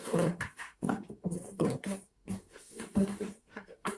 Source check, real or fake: fake